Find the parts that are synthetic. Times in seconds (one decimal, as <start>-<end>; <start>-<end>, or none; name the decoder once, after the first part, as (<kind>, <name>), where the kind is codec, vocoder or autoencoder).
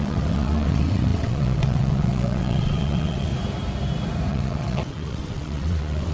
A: 0.0-3.3 (vocoder, WaveNeXt); 4.3-6.1